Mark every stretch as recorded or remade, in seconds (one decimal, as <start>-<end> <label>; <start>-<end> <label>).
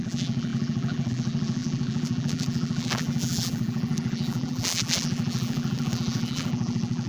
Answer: 0.0-7.1 remade